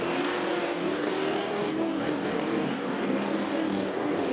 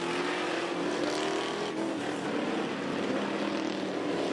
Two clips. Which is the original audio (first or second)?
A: second